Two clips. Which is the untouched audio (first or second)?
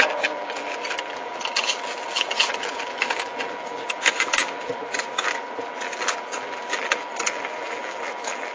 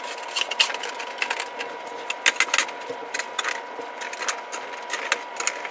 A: second